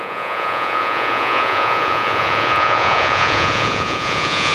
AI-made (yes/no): yes